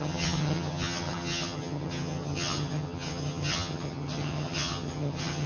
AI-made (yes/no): yes